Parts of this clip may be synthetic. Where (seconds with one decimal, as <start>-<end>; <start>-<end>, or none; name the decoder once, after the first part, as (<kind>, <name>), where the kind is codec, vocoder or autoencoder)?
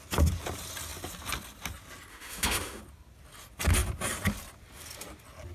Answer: 2.1-2.8 (autoencoder, DAC-VAE)